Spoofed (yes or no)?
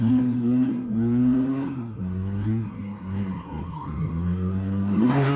yes